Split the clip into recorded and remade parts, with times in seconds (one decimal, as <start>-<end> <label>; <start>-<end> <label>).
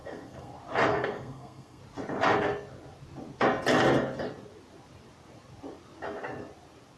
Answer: 0.0-0.5 remade; 0.5-0.9 recorded; 0.9-1.8 remade; 1.8-7.0 recorded